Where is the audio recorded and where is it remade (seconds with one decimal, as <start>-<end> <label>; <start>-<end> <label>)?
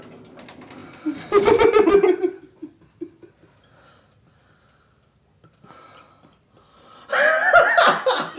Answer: 0.0-8.4 recorded